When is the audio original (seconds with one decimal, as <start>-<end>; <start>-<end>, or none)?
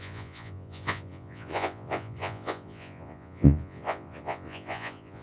none